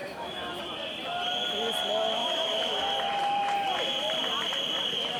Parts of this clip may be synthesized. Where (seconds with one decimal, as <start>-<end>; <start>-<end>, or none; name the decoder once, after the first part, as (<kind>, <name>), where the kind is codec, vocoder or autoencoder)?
0.0-0.6 (autoencoder, DAC-VAE); 2.2-2.8